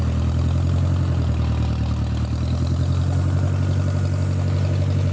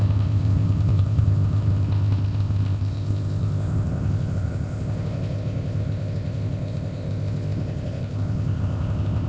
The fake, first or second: second